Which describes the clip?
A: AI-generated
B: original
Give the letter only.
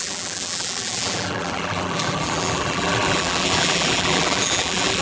A